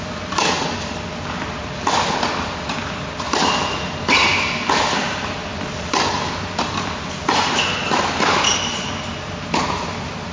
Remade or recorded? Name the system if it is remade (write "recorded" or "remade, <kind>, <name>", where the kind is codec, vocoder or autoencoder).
recorded